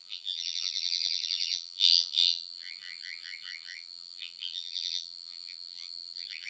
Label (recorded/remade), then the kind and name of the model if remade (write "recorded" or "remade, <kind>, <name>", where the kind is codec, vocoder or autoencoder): remade, vocoder, BigVGAN v2